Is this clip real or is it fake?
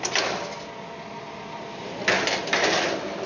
real